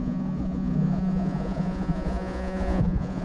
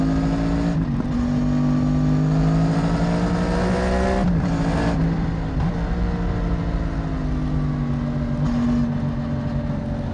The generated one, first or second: first